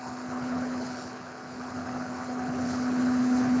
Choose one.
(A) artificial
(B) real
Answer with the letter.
A